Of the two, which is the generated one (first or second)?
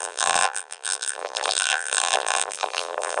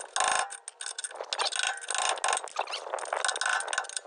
first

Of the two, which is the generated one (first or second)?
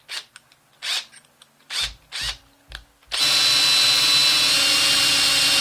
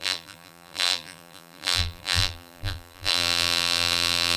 second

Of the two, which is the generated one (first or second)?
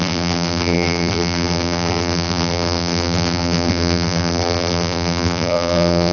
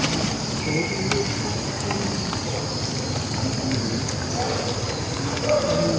first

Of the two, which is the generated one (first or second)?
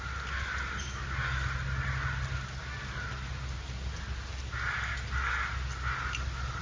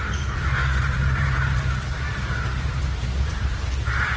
second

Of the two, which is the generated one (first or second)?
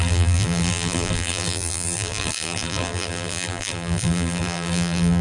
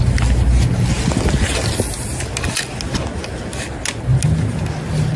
first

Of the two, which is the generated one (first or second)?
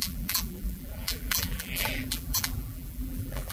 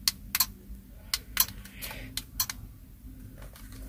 first